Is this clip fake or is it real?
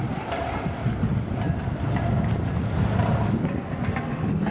real